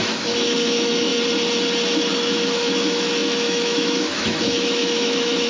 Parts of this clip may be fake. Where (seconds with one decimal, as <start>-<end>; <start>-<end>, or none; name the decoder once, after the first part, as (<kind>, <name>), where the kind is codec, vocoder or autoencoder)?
0.0-1.1 (autoencoder, DAC-VAE); 2.1-5.5